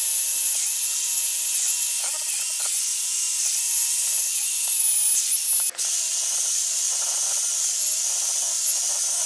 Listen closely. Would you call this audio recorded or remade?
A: recorded